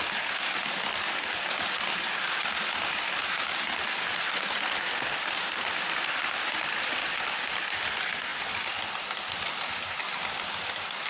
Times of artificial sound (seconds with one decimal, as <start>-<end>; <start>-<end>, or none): none